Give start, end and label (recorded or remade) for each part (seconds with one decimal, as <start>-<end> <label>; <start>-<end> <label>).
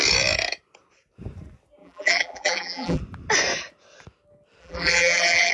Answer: 0.0-1.8 recorded; 1.8-3.0 remade; 3.0-4.6 recorded; 4.6-5.5 remade